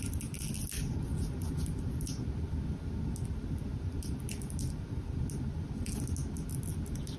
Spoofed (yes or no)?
no